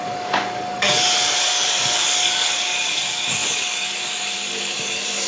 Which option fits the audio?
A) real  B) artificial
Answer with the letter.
B